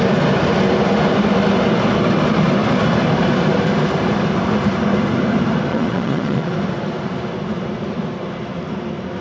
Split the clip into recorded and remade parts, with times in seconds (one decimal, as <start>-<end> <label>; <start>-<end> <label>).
0.0-5.7 recorded; 5.7-6.5 remade; 6.5-9.2 recorded